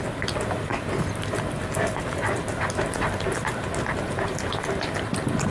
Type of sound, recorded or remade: recorded